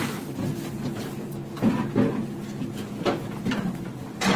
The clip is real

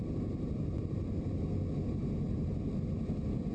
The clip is real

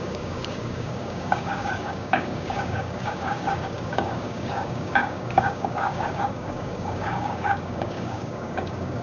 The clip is fake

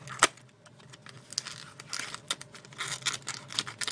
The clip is real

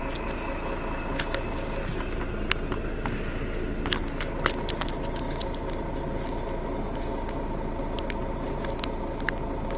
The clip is real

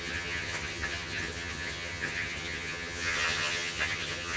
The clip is fake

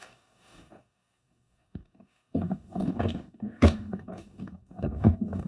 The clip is fake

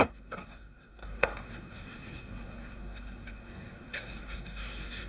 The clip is fake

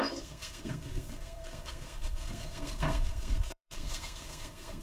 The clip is fake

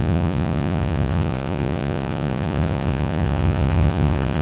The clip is fake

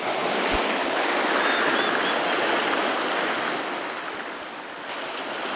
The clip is real